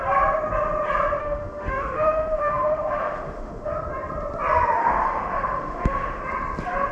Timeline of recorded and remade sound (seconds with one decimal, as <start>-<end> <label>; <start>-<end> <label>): 0.0-1.2 recorded; 1.2-3.7 remade; 3.7-4.8 recorded; 4.8-6.2 remade; 6.2-6.9 recorded